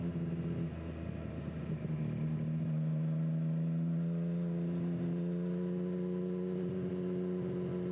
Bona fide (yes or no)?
yes